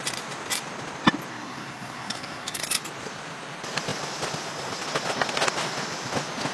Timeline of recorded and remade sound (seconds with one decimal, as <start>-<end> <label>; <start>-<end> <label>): 0.0-1.3 recorded; 1.3-2.6 remade; 2.6-6.5 recorded